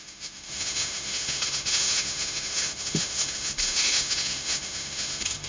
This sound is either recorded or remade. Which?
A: remade